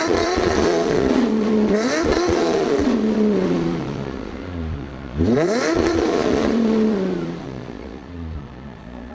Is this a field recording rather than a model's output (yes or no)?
no